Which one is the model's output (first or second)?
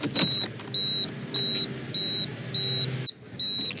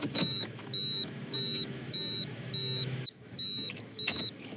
second